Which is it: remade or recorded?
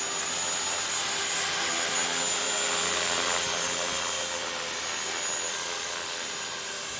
recorded